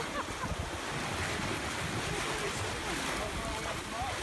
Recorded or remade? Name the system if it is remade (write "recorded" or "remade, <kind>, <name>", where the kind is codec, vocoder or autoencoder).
recorded